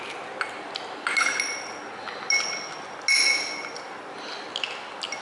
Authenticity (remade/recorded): recorded